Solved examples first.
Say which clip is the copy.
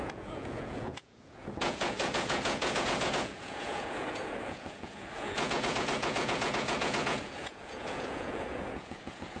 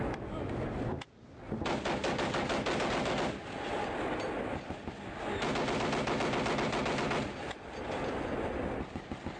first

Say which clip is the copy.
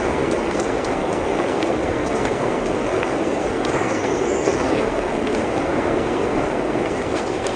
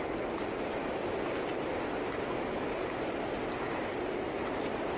first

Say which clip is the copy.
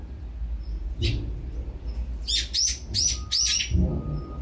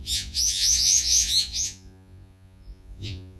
second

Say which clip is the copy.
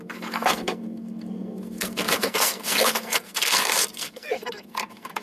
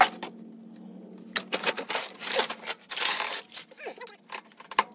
first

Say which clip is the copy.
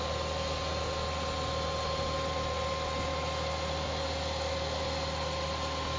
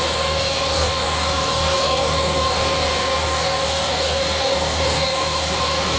second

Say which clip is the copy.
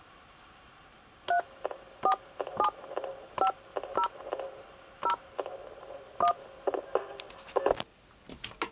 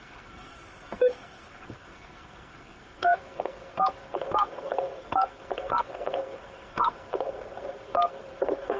second